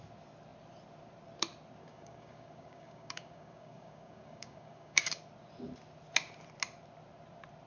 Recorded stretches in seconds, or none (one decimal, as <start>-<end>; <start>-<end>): 0.0-1.8; 5.2-7.7